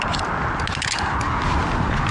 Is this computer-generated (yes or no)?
no